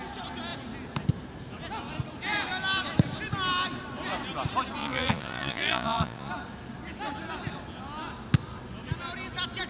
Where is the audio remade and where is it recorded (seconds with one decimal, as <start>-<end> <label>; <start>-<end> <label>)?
0.0-4.8 recorded; 4.8-6.3 remade; 6.3-9.7 recorded